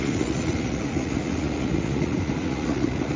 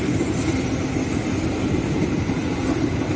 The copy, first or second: first